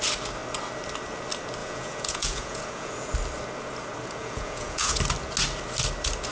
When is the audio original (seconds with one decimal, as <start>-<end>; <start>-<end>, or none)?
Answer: 0.0-1.6; 3.1-4.2; 5.0-6.3